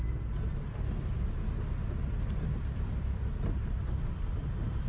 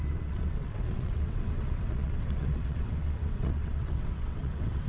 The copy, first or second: second